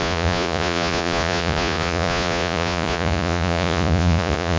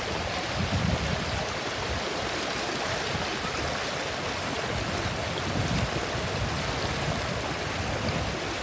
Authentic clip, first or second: second